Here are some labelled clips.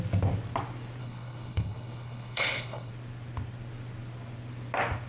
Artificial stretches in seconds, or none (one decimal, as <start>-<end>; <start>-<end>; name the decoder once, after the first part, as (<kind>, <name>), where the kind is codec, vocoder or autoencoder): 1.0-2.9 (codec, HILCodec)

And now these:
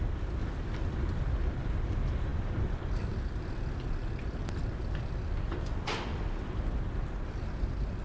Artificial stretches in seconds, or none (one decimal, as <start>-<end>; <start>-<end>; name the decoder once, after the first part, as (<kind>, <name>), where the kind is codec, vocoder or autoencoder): none

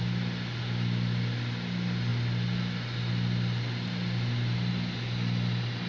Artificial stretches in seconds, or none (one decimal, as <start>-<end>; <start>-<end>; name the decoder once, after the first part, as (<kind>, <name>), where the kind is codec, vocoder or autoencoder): none